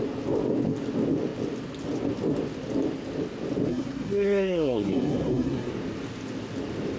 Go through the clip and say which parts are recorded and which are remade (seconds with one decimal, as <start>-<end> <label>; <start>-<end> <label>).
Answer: 0.0-3.7 recorded; 3.7-5.7 remade; 5.7-7.0 recorded